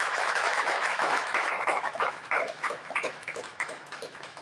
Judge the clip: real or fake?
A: fake